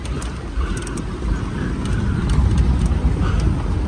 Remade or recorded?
recorded